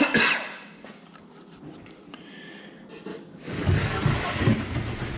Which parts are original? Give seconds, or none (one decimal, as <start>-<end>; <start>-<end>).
0.0-3.1; 4.0-5.2